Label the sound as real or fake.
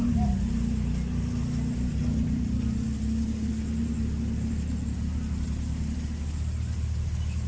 real